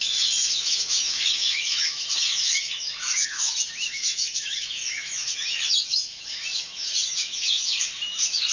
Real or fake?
fake